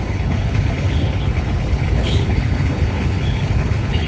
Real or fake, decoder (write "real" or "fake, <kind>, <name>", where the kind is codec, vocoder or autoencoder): fake, codec, HILCodec